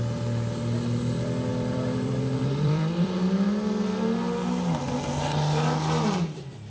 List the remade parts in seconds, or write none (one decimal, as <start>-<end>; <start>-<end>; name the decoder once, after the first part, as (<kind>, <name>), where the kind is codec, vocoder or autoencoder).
1.5-3.2 (vocoder, BigVGAN v2)